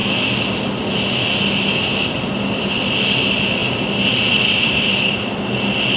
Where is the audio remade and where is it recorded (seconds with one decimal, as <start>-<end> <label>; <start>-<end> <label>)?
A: 0.0-6.0 recorded